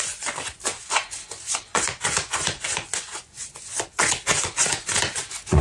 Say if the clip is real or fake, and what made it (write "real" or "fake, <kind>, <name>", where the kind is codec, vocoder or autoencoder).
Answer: fake, vocoder, Vocos